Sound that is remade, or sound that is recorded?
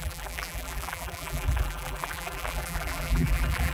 remade